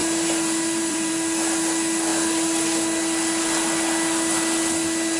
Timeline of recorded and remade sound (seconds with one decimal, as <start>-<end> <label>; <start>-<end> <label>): 0.0-1.1 remade; 1.1-5.2 recorded